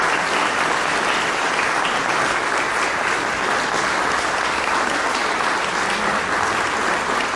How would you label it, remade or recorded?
recorded